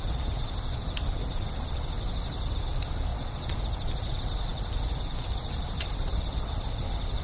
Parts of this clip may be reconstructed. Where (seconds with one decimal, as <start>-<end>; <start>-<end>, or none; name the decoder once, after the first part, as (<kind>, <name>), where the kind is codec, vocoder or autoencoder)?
3.1-3.6 (vocoder, Vocos)